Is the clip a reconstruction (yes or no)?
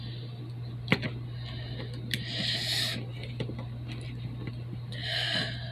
no